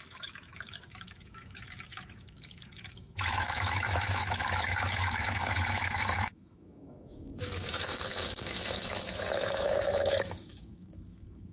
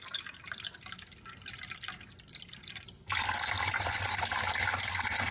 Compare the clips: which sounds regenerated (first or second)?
first